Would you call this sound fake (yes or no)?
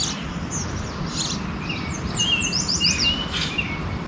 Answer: no